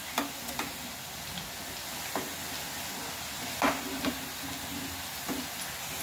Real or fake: real